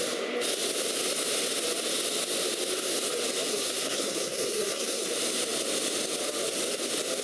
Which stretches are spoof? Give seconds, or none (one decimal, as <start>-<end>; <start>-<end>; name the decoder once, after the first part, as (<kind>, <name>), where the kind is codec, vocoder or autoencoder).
3.5-5.1 (codec, SNAC)